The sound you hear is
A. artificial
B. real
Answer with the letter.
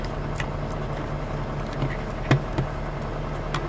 B